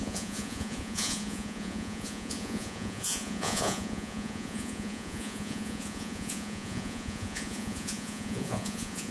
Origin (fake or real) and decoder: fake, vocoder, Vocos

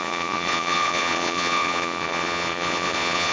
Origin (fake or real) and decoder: fake, vocoder, Vocos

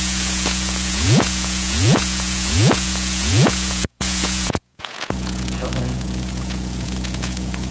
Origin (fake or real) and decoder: fake, vocoder, Vocos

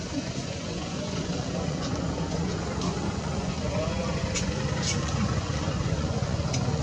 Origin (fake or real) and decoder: fake, vocoder, Vocos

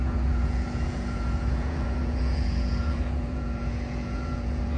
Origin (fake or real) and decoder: fake, vocoder, Vocos